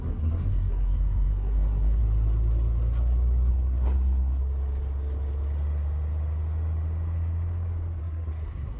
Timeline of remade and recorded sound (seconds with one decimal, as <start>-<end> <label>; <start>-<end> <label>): 0.0-2.0 remade; 2.0-3.5 recorded; 3.5-4.4 remade; 4.4-8.0 recorded; 8.0-8.8 remade